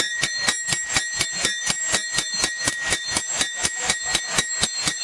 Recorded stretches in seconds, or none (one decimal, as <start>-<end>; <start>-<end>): 0.0-5.0